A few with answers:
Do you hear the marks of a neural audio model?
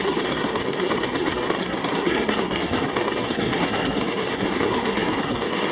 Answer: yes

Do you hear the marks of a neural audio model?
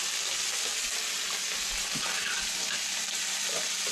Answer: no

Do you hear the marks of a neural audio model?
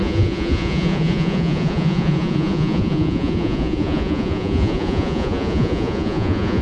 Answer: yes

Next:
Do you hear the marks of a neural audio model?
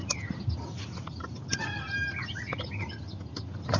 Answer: no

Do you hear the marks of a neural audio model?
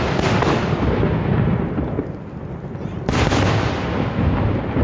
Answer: no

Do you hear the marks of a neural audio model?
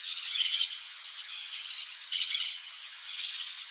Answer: yes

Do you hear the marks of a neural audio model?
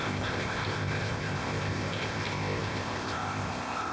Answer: yes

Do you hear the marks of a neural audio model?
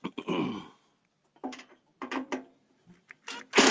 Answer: no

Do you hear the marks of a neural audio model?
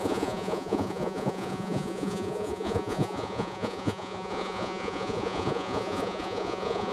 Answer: yes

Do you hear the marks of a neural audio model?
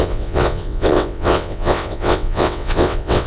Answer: yes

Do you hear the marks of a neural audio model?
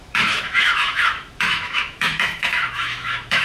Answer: yes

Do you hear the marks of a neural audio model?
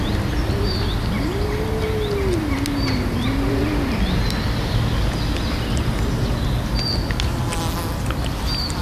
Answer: no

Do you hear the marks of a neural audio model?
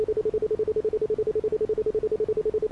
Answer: no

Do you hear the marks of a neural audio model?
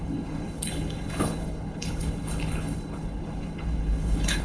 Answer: yes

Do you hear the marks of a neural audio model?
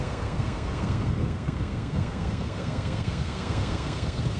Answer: yes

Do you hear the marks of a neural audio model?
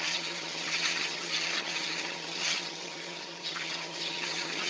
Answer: yes